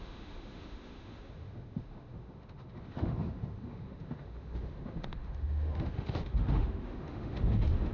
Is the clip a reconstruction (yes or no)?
yes